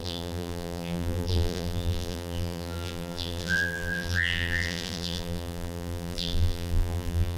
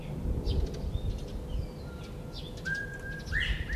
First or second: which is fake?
first